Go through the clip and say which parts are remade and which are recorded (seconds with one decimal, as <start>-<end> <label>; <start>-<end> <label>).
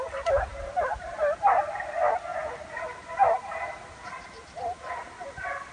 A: 0.0-5.7 recorded